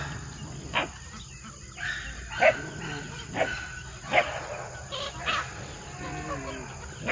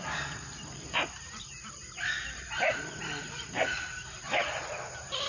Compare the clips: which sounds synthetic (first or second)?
second